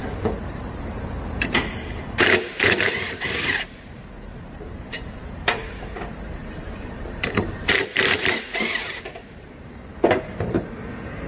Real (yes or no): no